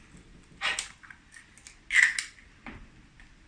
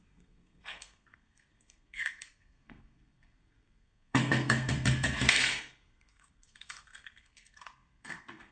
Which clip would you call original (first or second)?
first